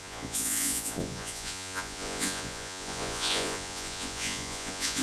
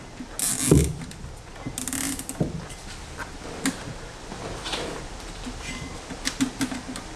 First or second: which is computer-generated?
first